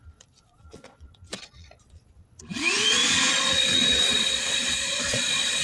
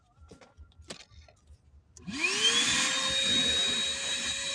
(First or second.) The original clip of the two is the second